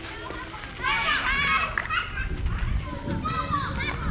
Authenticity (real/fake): real